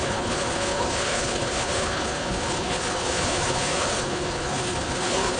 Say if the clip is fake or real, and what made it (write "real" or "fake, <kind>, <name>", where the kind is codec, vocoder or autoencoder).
fake, codec, HILCodec